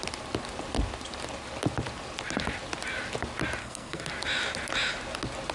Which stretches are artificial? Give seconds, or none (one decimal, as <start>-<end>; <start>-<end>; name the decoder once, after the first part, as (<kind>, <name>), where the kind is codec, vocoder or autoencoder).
3.6-4.1 (codec, SNAC)